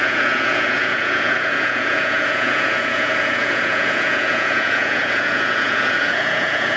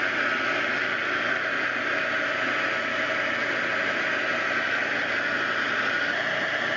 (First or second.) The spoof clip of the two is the first